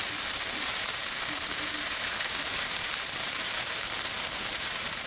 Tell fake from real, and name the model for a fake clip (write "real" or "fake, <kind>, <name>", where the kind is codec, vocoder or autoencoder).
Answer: fake, vocoder, BigVGAN v2